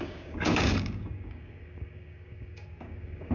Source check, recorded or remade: remade